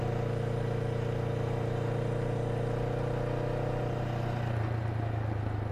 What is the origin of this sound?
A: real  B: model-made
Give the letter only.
A